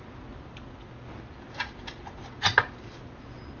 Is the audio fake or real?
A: real